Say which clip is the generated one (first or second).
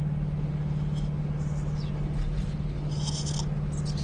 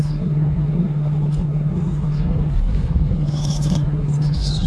second